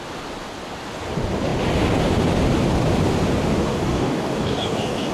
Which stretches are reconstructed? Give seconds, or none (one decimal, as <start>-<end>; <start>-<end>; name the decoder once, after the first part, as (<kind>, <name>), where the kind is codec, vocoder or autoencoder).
3.7-5.1 (codec, DAC)